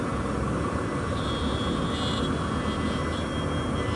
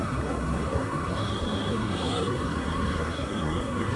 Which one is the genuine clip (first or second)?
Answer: first